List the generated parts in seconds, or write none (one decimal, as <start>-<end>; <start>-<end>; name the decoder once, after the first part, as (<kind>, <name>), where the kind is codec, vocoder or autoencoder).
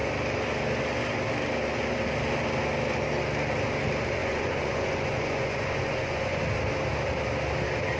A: 4.2-6.4 (vocoder, Vocos)